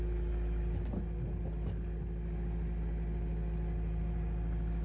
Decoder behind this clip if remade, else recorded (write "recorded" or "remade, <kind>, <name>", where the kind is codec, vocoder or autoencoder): recorded